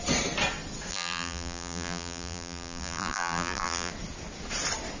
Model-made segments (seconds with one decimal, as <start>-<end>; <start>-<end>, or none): 0.9-3.9